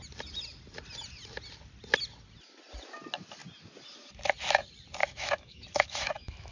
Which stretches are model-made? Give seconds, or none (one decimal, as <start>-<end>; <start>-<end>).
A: 5.0-6.5